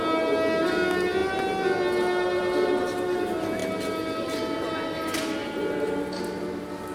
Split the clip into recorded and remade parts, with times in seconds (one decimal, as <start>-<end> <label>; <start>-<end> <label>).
0.0-6.9 recorded